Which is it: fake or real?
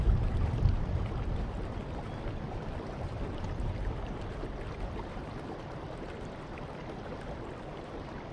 real